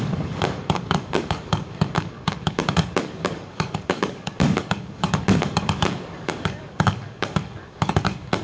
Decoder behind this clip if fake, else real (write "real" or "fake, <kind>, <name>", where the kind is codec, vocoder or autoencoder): fake, codec, DAC